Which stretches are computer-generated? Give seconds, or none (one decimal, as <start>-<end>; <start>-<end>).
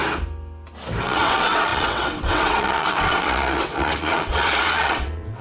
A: 1.0-5.4